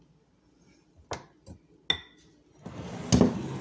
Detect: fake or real real